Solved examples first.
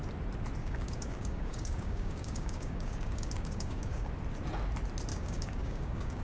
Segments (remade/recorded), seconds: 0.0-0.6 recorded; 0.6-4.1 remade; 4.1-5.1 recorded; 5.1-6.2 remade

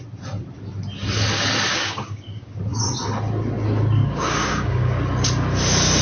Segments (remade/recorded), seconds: 0.0-1.7 recorded; 1.7-2.5 remade; 2.5-4.0 recorded; 4.0-5.0 remade; 5.0-6.0 recorded

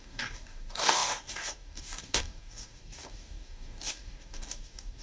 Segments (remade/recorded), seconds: 0.0-5.0 remade

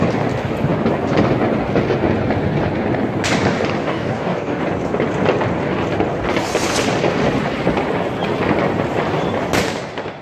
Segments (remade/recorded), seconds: 0.0-3.8 recorded; 3.8-4.6 remade; 4.6-10.2 recorded